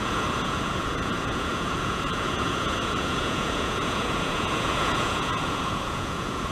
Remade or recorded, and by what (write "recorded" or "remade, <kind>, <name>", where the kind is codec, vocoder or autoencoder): remade, vocoder, Vocos